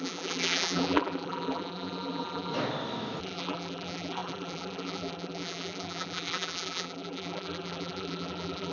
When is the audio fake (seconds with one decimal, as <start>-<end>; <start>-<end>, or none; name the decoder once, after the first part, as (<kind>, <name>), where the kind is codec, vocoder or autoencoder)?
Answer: 0.0-2.5 (vocoder, BigVGAN v2); 3.2-8.7